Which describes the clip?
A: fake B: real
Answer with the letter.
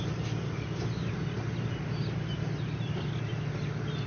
B